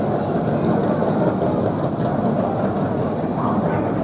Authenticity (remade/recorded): recorded